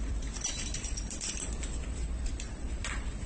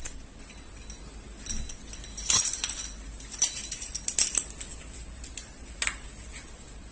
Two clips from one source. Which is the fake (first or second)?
first